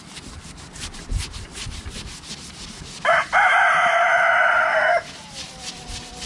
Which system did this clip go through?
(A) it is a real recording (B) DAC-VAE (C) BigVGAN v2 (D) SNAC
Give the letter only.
A